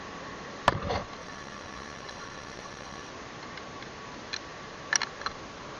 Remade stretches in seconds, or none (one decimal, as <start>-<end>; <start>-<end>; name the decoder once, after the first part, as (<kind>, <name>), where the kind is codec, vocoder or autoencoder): 1.2-3.1 (vocoder, WaveNeXt)